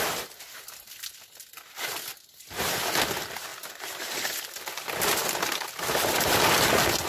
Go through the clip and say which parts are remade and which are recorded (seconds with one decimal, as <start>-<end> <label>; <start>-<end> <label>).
0.0-3.5 recorded; 3.5-4.4 remade; 4.4-7.1 recorded